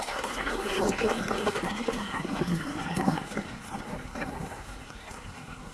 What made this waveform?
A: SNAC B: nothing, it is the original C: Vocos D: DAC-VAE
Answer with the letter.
A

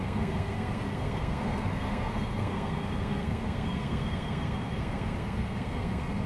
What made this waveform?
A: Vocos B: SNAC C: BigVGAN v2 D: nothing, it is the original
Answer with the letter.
B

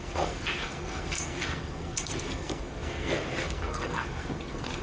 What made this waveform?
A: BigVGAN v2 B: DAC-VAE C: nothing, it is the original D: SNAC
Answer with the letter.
D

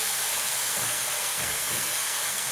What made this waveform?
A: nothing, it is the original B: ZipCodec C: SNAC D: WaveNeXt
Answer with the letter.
C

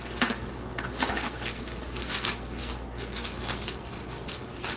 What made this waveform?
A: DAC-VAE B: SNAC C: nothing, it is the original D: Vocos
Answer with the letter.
B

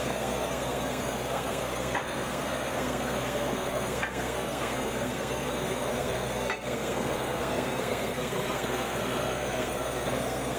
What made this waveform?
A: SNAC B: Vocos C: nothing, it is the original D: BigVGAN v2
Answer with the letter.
A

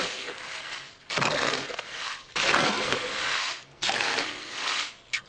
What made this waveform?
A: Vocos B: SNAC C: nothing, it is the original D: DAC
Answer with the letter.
B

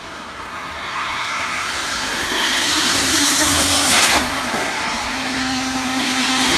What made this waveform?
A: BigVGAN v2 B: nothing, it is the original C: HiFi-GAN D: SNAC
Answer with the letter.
D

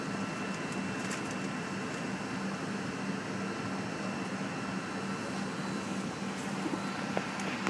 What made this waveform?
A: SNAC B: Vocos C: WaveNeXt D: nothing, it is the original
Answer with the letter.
D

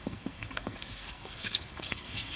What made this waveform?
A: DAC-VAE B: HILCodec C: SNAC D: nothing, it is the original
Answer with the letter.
C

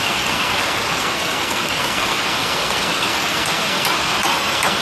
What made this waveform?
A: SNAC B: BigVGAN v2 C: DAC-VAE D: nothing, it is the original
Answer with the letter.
A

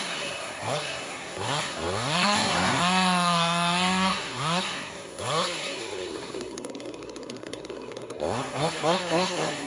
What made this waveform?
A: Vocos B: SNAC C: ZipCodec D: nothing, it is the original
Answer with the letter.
B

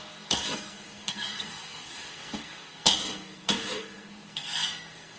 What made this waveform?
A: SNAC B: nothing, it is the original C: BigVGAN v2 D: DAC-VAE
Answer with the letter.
A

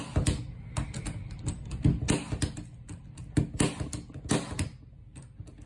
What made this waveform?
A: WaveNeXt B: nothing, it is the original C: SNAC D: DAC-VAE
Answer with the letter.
B